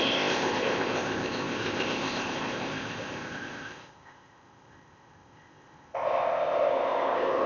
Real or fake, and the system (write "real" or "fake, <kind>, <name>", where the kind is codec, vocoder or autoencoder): fake, codec, ZipCodec